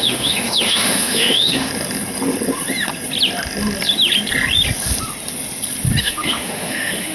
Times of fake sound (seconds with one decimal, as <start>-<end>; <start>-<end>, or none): 0.0-1.7; 6.0-7.1